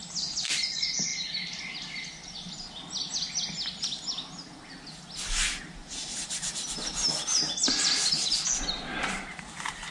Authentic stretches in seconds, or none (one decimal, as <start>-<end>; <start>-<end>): 0.0-1.1; 1.6-9.9